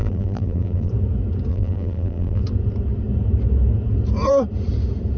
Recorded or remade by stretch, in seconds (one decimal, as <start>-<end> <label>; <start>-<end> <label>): 0.0-0.9 remade; 0.9-1.5 recorded; 1.5-2.4 remade; 2.4-5.2 recorded